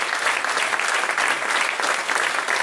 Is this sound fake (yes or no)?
no